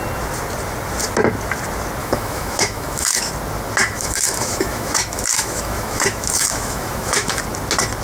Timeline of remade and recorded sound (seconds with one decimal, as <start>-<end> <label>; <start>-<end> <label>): 0.0-2.0 recorded; 2.0-3.3 remade; 3.3-3.8 recorded; 3.8-7.4 remade; 7.4-8.0 recorded